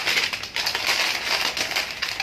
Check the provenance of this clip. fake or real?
real